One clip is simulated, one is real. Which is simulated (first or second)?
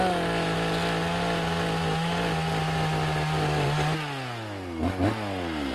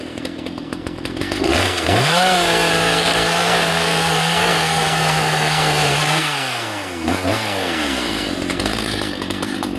second